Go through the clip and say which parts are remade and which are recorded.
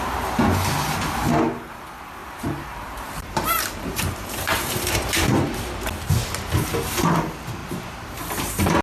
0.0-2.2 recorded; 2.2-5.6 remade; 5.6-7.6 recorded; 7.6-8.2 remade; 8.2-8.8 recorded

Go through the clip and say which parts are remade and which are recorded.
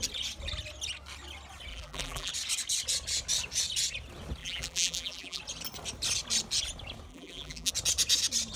0.0-1.7 recorded; 1.7-2.3 remade; 2.3-4.4 recorded; 4.4-5.4 remade; 5.4-7.1 recorded; 7.1-7.7 remade; 7.7-8.6 recorded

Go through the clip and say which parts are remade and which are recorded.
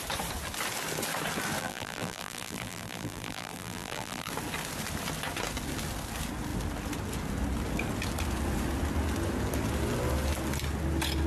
0.0-1.6 recorded; 1.6-4.3 remade; 4.3-11.3 recorded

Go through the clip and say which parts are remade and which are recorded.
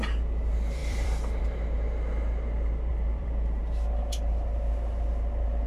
0.0-0.8 recorded; 0.8-1.4 remade; 1.4-2.9 recorded; 2.9-3.6 remade; 3.6-5.7 recorded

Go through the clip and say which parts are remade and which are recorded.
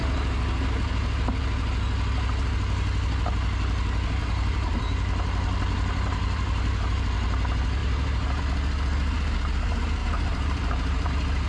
0.0-4.2 recorded; 4.2-7.0 remade; 7.0-7.8 recorded; 7.8-8.4 remade; 8.4-10.0 recorded; 10.0-11.1 remade; 11.1-11.5 recorded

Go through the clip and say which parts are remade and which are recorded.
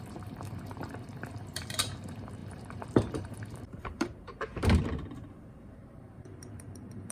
0.0-4.5 remade; 4.5-5.1 recorded; 5.1-7.1 remade